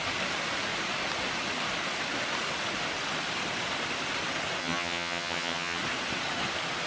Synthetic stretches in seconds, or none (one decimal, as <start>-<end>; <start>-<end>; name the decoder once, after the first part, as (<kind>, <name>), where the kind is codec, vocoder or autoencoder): 4.6-5.8 (vocoder, HiFi-GAN)